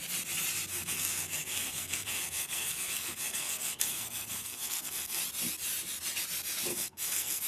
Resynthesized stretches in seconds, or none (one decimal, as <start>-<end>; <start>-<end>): 0.7-5.2; 6.7-7.5